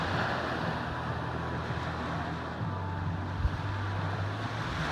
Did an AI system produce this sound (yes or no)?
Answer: no